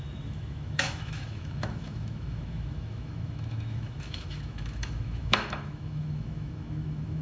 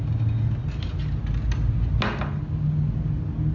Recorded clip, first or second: second